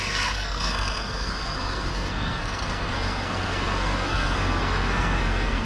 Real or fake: fake